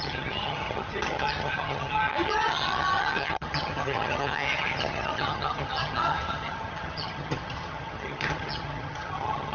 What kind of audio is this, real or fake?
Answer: fake